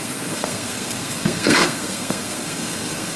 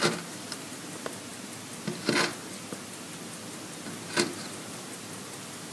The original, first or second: second